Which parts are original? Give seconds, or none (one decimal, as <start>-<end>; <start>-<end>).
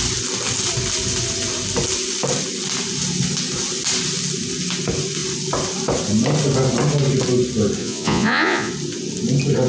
0.0-7.8; 8.7-9.7